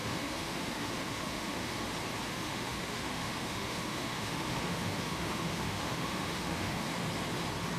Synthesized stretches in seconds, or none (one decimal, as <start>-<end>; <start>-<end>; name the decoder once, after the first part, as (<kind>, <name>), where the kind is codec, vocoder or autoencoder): 0.0-1.7 (autoencoder, DAC-VAE); 2.3-6.9